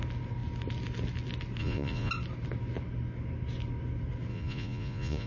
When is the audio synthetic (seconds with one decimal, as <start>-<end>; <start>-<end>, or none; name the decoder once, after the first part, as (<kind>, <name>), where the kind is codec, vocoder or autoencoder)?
1.6-2.1 (vocoder, Vocos); 4.3-5.3